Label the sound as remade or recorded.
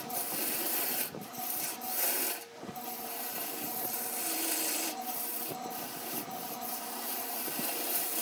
remade